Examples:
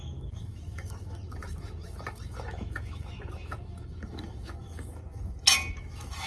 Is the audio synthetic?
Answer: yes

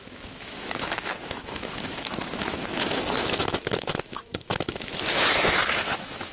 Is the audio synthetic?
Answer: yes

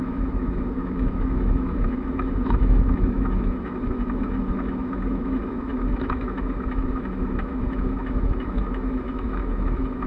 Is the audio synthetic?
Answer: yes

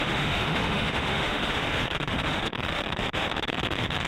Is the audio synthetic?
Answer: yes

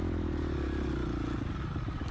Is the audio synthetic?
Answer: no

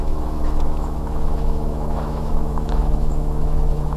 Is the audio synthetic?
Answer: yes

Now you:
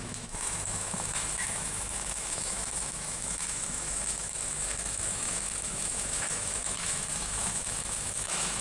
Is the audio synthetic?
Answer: yes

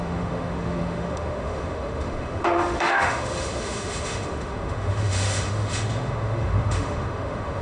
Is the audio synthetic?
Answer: yes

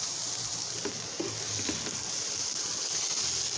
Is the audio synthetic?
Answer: no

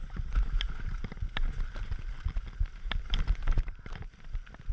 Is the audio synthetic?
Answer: no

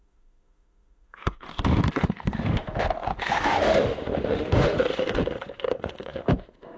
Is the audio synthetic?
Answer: yes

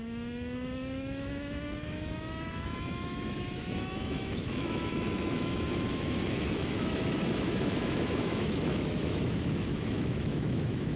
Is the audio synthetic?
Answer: yes